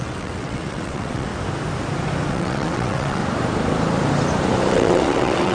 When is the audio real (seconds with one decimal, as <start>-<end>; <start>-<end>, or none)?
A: 1.3-2.3; 3.2-4.7